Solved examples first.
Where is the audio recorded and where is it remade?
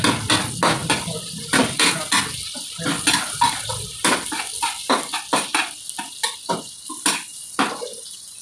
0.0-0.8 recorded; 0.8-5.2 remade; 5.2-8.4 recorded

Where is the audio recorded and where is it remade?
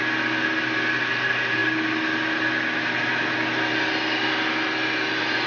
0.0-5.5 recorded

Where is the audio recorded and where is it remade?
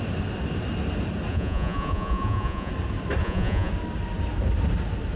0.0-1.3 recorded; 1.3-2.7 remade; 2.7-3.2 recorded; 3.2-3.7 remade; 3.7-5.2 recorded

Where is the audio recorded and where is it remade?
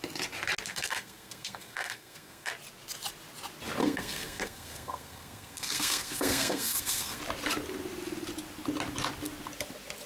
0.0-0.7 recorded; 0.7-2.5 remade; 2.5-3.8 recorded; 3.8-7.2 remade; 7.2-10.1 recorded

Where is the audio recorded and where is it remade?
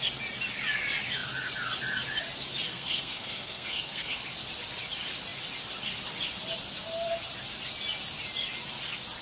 0.0-2.7 recorded; 2.7-4.2 remade; 4.2-9.2 recorded